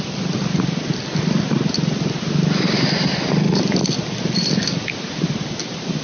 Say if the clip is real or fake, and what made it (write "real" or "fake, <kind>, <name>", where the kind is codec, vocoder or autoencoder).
real